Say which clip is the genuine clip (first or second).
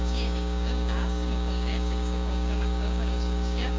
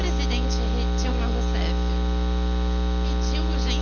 second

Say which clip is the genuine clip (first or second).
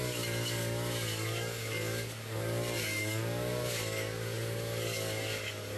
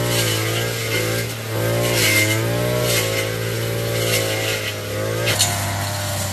second